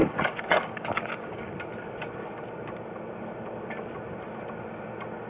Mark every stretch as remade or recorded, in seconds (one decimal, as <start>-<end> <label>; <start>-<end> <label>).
0.0-1.5 remade; 1.5-5.3 recorded